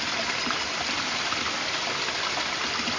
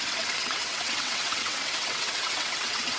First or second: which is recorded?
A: first